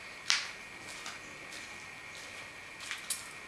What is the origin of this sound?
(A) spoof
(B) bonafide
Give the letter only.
B